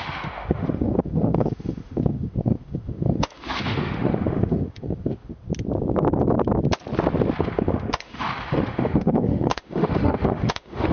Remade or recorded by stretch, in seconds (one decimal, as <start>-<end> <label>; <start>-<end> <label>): 0.0-5.3 remade; 5.3-7.4 recorded; 7.4-10.9 remade